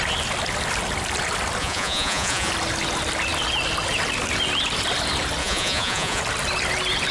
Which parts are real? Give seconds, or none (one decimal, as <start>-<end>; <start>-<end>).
0.0-1.6; 2.5-5.4; 6.2-7.1